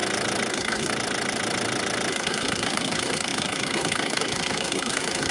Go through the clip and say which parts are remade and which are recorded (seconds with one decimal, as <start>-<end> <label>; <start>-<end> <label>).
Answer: 0.0-0.5 recorded; 0.5-0.9 remade; 0.9-2.1 recorded; 2.1-5.3 remade